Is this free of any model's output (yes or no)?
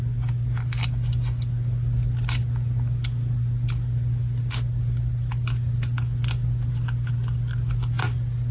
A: yes